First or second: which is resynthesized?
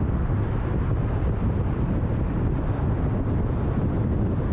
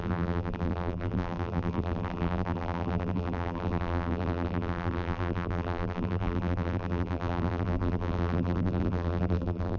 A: second